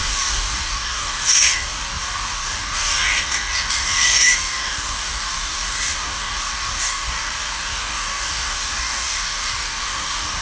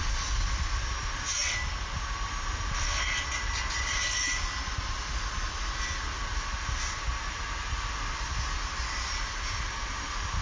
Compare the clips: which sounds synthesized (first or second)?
first